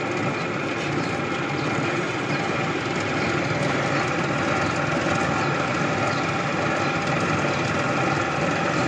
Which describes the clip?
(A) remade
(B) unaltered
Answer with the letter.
B